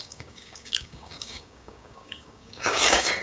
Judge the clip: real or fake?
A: fake